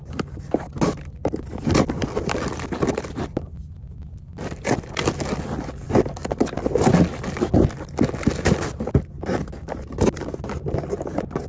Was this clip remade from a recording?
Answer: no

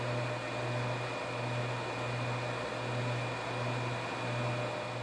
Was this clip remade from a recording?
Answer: no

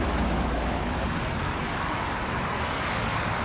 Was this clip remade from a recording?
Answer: yes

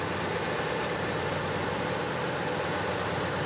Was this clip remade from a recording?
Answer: no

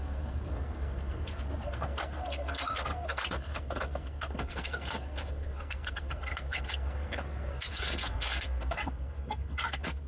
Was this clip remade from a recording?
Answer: yes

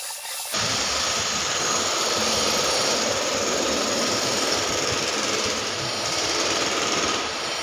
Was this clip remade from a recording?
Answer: no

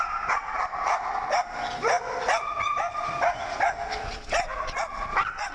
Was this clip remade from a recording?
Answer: no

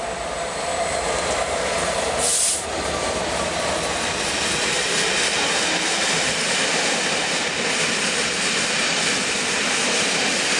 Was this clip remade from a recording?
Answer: yes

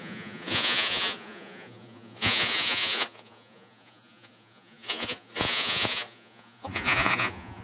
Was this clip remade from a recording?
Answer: yes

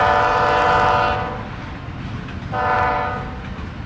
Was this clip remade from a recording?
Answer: no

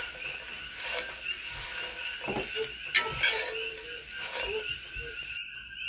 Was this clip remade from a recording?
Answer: no